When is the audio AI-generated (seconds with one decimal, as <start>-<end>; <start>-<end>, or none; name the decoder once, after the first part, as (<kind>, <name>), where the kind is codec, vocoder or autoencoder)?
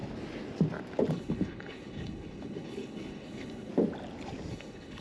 1.1-3.7 (codec, HILCodec); 4.5-5.0